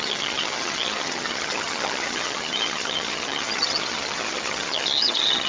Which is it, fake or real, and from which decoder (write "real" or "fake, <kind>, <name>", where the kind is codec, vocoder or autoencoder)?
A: fake, vocoder, HiFi-GAN